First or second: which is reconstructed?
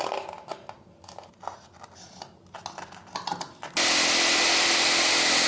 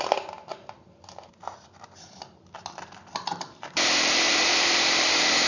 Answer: second